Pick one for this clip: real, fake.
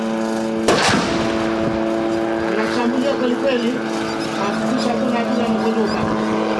real